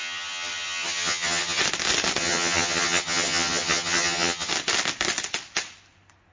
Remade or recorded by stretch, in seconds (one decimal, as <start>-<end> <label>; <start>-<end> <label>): 0.0-1.6 remade; 1.6-2.2 recorded; 2.2-4.5 remade; 4.5-6.3 recorded